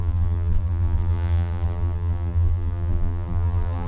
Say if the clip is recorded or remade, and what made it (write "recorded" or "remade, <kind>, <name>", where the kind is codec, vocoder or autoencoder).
remade, vocoder, BigVGAN v2